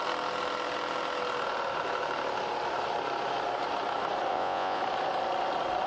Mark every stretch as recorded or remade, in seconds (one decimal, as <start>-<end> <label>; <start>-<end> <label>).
0.0-4.3 recorded; 4.3-4.8 remade; 4.8-5.9 recorded